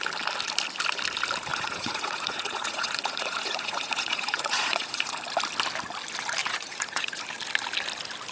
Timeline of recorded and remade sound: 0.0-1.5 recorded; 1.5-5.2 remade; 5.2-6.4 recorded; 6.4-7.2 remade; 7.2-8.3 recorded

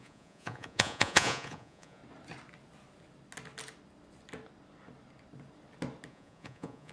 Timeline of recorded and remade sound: 0.0-2.0 remade; 2.0-6.1 recorded; 6.1-6.9 remade

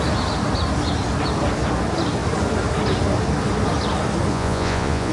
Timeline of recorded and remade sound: 0.0-4.3 recorded; 4.3-5.1 remade

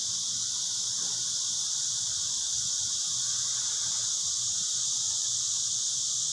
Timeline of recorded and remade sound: 0.0-2.6 recorded; 2.6-3.6 remade; 3.6-4.1 recorded; 4.1-4.7 remade; 4.7-6.3 recorded

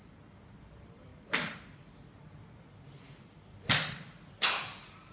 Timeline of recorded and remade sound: 0.0-5.1 recorded

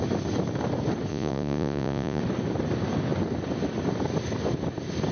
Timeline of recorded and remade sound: 0.0-1.1 recorded; 1.1-2.2 remade; 2.2-5.1 recorded

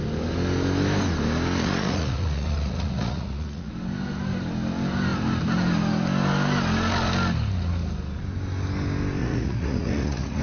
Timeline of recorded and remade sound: 0.0-1.6 recorded; 1.6-3.7 remade; 3.7-9.2 recorded; 9.2-10.4 remade